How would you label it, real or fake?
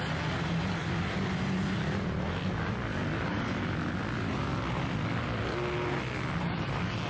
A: real